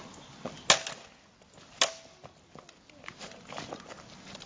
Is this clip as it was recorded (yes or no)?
yes